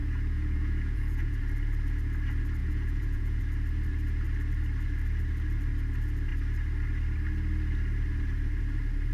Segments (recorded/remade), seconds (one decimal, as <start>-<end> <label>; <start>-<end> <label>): 0.0-1.4 remade; 1.4-2.6 recorded; 2.6-3.4 remade; 3.4-9.1 recorded